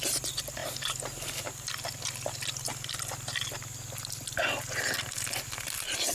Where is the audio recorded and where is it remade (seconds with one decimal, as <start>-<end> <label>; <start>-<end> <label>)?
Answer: 0.0-0.6 recorded; 0.6-1.7 remade; 1.7-6.1 recorded